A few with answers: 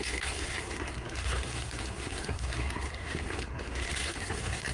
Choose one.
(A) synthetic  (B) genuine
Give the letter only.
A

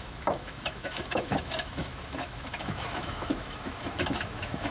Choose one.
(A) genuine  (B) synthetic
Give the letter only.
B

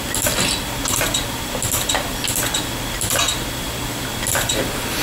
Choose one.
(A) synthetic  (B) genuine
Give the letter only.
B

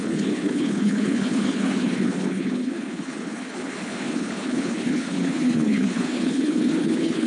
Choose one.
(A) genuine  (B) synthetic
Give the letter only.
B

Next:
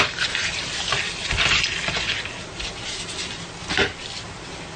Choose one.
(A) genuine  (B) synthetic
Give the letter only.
A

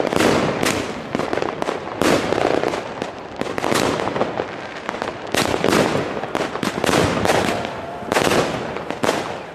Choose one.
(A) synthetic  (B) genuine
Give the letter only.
B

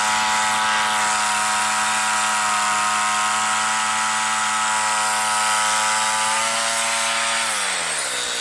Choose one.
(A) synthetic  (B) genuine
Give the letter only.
B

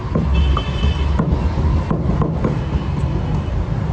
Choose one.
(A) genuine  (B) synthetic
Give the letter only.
A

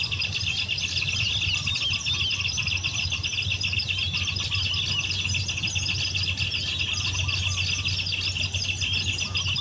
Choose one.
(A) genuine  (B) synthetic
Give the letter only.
A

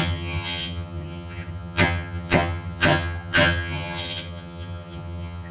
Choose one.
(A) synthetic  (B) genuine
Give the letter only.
A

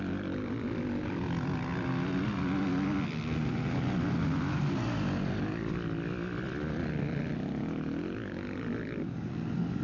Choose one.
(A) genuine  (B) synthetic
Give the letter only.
A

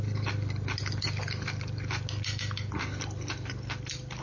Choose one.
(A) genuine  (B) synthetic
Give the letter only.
A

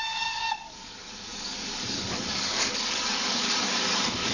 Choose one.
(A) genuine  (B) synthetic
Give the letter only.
B